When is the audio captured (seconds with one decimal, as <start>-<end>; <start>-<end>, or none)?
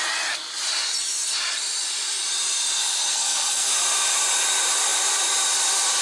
0.0-3.1; 3.7-6.0